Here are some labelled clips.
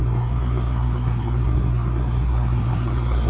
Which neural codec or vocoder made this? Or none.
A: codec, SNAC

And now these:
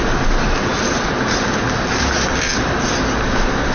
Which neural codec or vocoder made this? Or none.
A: none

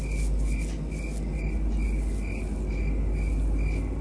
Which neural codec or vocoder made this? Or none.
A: none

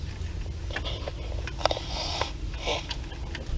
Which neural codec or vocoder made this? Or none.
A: none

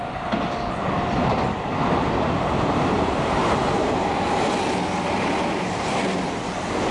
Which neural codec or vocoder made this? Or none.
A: none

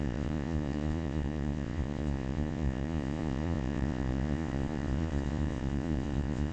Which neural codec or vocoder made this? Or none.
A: vocoder, Vocos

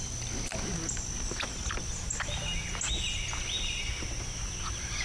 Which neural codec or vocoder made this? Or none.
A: none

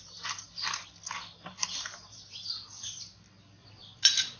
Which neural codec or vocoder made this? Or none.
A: none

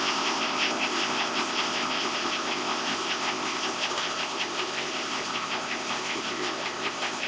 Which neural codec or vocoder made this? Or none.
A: codec, ZipCodec